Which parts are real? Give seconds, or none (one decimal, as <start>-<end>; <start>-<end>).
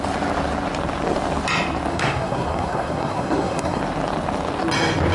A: 0.0-1.9; 3.8-5.1